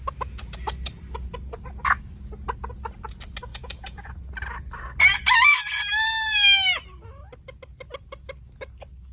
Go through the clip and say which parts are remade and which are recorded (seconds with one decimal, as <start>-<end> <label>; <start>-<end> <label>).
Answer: 0.0-3.5 recorded; 3.5-4.1 remade; 4.1-9.1 recorded